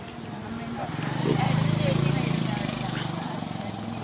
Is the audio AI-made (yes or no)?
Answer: no